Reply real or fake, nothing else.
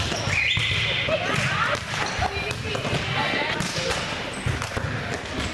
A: real